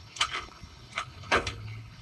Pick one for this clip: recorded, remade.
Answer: remade